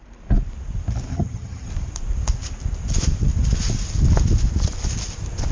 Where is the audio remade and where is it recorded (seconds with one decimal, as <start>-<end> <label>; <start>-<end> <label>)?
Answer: 0.0-1.1 recorded; 1.1-1.7 remade; 1.7-5.5 recorded